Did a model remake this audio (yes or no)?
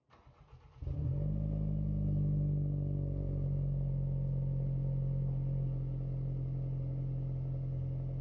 no